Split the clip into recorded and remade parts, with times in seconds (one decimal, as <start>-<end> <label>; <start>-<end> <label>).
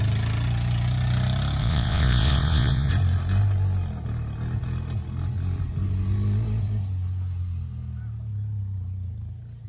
0.0-1.6 recorded; 1.6-2.9 remade; 2.9-9.7 recorded